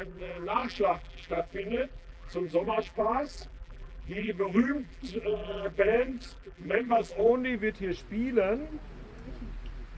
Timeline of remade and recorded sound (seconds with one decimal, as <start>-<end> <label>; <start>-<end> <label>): 0.0-7.3 remade; 7.3-10.0 recorded